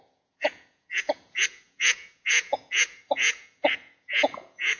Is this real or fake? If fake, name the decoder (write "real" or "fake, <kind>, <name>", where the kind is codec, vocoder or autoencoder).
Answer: fake, vocoder, Vocos